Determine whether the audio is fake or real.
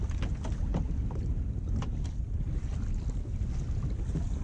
real